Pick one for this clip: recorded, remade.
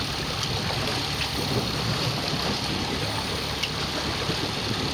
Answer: recorded